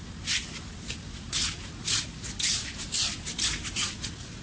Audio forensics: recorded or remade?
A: recorded